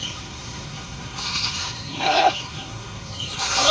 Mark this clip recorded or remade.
remade